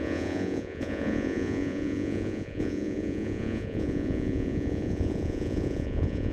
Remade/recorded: remade